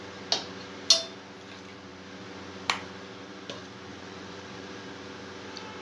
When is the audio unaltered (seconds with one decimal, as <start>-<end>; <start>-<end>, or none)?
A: 0.0-3.9; 4.9-5.8